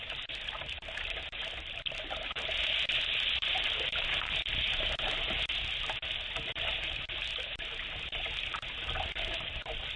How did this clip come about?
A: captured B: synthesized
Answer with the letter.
A